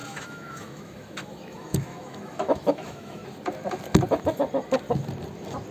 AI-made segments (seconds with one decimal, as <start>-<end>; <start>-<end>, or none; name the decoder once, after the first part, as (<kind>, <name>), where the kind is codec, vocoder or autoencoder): 0.0-3.2 (autoencoder, DAC-VAE)